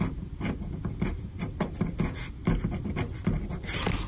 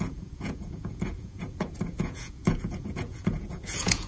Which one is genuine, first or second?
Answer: first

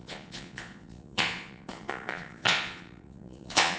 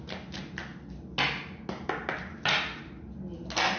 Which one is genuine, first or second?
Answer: second